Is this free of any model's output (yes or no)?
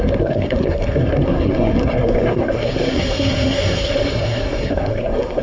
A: no